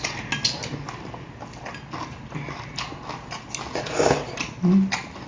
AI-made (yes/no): no